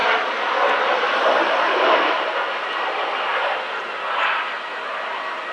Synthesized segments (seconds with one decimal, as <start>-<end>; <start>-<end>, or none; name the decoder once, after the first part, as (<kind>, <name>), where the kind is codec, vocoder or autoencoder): 0.0-2.7 (vocoder, BigVGAN v2)